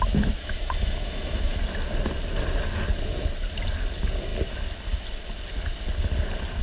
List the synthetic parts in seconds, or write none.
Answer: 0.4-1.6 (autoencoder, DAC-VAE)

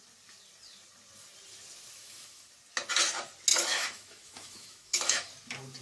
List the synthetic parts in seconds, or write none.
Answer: 1.9-2.5 (autoencoder, DAC-VAE); 3.5-5.3

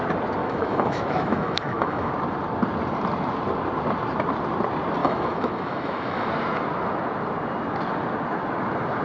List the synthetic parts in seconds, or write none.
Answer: 0.4-2.1 (autoencoder, DAC-VAE); 5.0-6.3

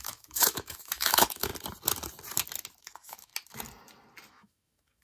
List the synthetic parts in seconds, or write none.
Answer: 0.0-1.5 (autoencoder, DAC-VAE); 2.8-3.3; 4.3-5.0

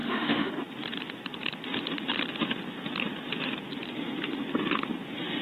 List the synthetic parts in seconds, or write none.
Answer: 0.0-0.5 (autoencoder, DAC-VAE)